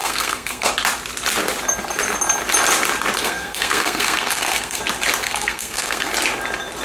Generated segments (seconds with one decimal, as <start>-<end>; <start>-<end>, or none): 0.0-0.7; 3.2-4.8; 5.2-6.1

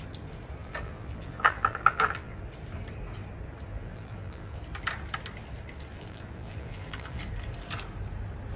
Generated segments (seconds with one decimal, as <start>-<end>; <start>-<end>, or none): 0.6-2.4; 3.7-4.6; 5.9-7.2

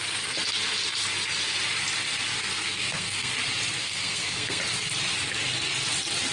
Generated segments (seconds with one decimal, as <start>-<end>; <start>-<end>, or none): 2.5-3.3; 3.8-4.6

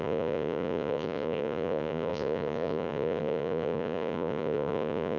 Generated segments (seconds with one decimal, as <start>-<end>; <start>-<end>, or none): 0.0-5.2

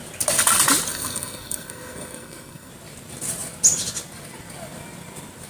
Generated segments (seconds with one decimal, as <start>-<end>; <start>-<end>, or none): 0.9-2.7

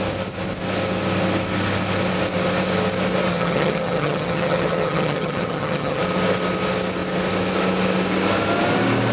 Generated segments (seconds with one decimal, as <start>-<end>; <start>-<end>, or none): 3.3-6.0